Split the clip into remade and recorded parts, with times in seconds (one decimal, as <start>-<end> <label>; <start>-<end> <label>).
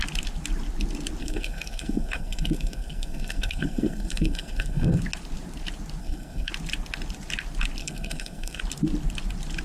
0.0-1.2 recorded; 1.2-5.0 remade; 5.0-6.0 recorded; 6.0-6.5 remade; 6.5-7.8 recorded; 7.8-8.6 remade; 8.6-9.6 recorded